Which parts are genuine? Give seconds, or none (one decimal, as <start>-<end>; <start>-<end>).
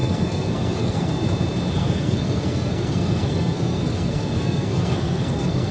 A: 1.2-1.8